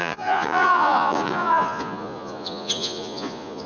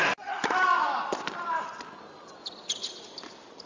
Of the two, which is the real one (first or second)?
second